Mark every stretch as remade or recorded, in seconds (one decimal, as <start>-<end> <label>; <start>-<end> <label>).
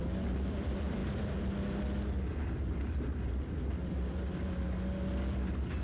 0.0-5.8 recorded